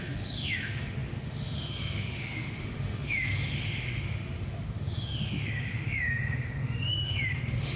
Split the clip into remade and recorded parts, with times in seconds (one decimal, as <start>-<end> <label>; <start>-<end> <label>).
0.0-7.8 remade